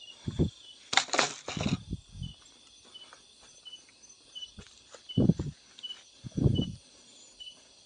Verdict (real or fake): real